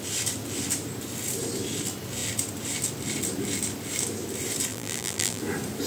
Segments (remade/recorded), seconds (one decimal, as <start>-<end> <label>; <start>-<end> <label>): 0.0-4.7 recorded; 4.7-5.4 remade; 5.4-5.9 recorded